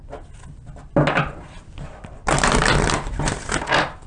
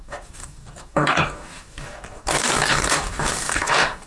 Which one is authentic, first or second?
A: first